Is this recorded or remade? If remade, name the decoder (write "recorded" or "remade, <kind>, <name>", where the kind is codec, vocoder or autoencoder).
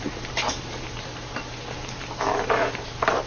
remade, vocoder, BigVGAN v2